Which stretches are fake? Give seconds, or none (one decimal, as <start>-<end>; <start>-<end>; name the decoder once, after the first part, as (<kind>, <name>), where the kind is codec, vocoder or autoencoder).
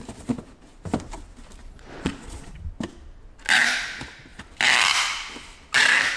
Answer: 1.6-2.6 (vocoder, Vocos)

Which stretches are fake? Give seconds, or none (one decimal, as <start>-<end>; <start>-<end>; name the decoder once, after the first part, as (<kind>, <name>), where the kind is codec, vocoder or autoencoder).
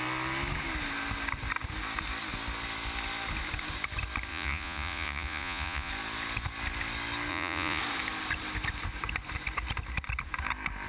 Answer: 4.3-5.9 (vocoder, Vocos); 7.3-7.8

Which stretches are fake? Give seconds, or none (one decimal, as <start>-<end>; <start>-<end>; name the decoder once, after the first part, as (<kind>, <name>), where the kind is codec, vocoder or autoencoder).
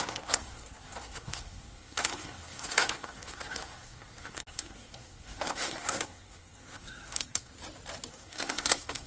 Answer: 0.0-7.5 (codec, SNAC); 8.1-9.1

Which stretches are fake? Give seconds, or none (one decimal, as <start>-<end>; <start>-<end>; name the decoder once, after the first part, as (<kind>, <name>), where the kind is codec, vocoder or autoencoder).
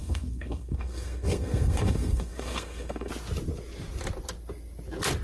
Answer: 0.0-3.1 (codec, SNAC)